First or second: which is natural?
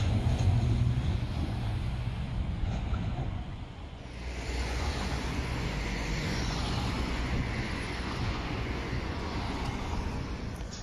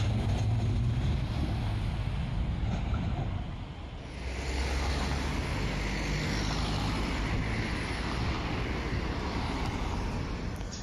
second